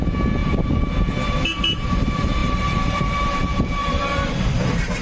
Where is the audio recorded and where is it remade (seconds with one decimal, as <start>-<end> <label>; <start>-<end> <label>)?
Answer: 0.0-2.4 recorded; 2.4-3.0 remade; 3.0-3.8 recorded; 3.8-4.4 remade; 4.4-5.0 recorded